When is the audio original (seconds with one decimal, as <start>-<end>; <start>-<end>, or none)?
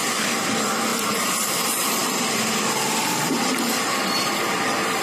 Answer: none